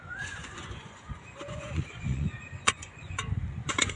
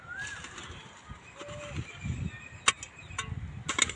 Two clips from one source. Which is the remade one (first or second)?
first